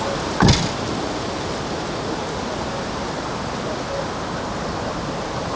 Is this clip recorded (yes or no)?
yes